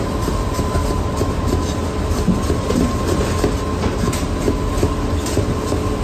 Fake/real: real